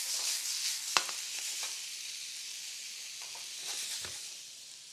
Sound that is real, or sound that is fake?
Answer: real